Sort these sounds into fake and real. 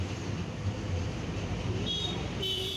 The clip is fake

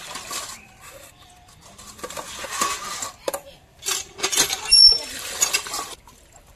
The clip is fake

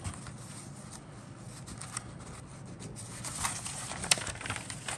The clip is real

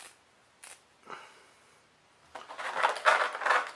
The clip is real